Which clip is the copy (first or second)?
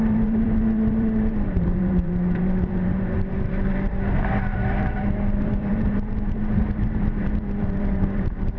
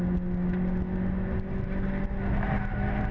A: first